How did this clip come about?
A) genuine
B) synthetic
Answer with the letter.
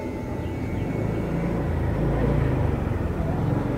A